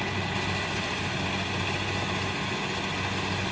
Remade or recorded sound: recorded